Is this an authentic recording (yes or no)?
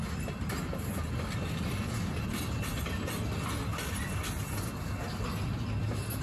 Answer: yes